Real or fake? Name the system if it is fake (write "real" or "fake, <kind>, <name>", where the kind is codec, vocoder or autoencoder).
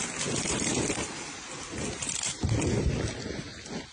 real